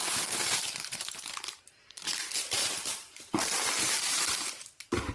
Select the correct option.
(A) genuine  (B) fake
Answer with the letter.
B